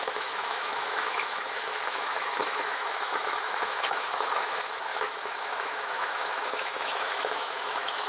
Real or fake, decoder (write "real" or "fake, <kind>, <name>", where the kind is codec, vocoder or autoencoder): fake, autoencoder, DAC-VAE